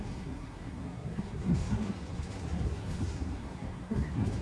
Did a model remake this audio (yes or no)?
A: yes